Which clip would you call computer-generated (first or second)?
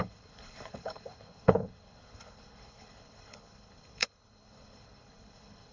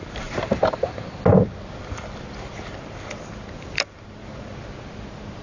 first